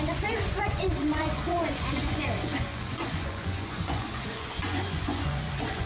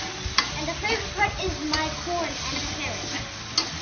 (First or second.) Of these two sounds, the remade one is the first